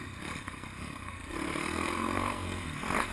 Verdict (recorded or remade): remade